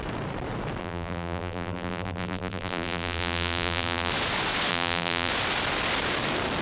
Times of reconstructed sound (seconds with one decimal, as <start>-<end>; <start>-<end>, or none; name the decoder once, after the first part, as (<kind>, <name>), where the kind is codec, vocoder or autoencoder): 0.8-4.1 (vocoder, BigVGAN v2); 4.7-5.3